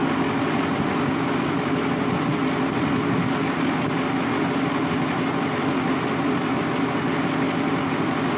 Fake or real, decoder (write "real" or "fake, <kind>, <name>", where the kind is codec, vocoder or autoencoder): real